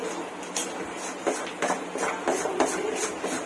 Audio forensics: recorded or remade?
recorded